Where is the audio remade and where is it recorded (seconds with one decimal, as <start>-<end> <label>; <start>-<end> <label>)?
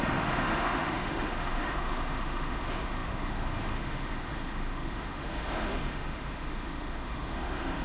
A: 0.0-7.8 remade